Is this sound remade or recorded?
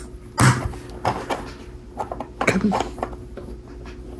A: recorded